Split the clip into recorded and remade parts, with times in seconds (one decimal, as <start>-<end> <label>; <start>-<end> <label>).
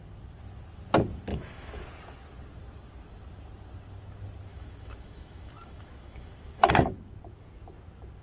0.0-1.3 recorded; 1.3-1.8 remade; 1.8-4.5 recorded; 4.5-6.7 remade; 6.7-8.2 recorded